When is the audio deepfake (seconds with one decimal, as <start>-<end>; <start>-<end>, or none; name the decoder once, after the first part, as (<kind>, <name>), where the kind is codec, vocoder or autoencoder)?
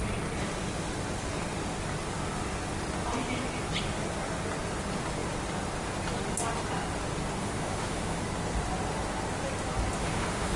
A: 7.4-8.2 (autoencoder, DAC-VAE); 10.0-10.6